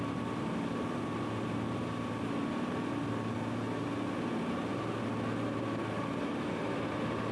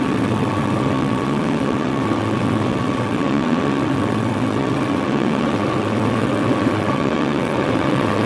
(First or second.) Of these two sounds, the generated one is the second